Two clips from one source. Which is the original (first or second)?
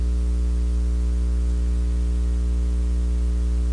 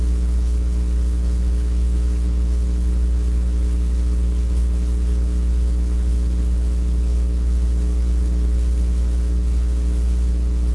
first